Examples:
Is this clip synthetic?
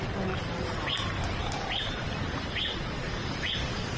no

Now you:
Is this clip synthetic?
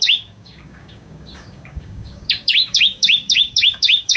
yes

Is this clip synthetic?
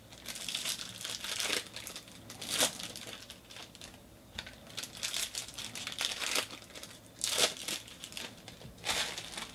no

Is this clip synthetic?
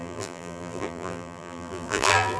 yes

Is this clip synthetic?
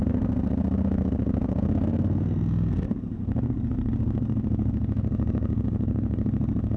yes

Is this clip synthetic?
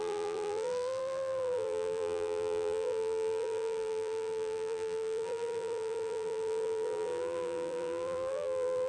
yes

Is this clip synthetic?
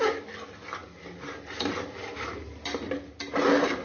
no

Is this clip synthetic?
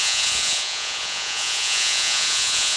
yes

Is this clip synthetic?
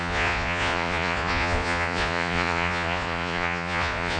yes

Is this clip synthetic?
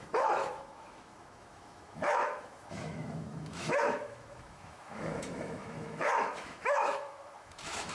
yes